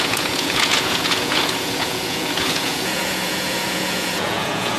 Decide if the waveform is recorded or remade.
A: remade